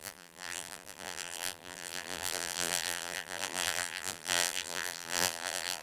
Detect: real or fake fake